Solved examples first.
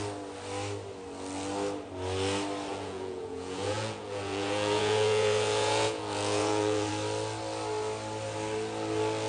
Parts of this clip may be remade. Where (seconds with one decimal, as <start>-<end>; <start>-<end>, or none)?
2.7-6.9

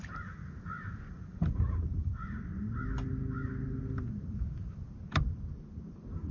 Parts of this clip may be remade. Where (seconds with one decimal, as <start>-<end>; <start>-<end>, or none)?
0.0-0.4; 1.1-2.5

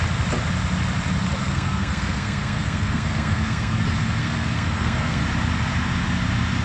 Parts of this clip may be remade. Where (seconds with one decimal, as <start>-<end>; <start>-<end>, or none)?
1.4-3.8; 4.2-5.2

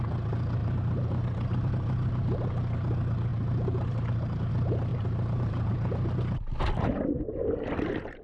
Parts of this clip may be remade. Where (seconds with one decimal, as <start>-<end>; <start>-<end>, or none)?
0.6-1.7; 3.3-4.5; 4.9-5.7